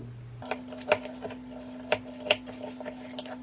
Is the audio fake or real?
real